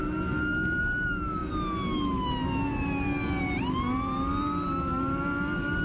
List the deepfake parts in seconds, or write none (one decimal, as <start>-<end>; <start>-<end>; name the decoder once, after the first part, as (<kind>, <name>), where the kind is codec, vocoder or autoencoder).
none